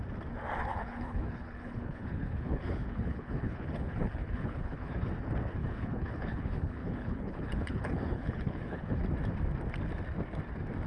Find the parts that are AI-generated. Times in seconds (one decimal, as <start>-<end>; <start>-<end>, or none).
0.7-5.1; 5.6-9.0